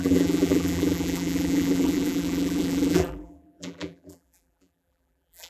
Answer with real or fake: fake